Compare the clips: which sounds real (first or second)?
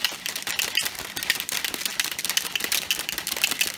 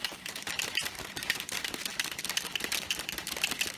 first